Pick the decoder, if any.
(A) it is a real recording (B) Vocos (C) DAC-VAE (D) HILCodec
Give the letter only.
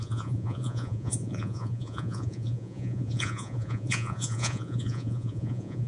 B